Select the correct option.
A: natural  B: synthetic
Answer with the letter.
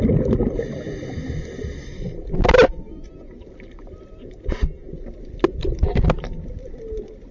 A